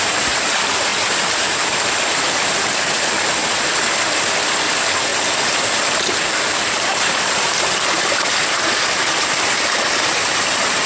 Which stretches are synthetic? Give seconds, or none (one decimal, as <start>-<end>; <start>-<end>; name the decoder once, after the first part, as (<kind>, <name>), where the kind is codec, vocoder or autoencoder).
5.1-7.6 (vocoder, BigVGAN v2)